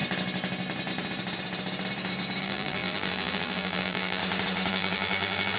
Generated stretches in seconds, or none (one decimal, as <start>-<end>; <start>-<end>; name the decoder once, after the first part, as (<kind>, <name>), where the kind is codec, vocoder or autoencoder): 2.4-4.2 (vocoder, BigVGAN v2); 4.7-5.6